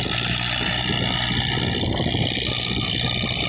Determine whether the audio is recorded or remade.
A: recorded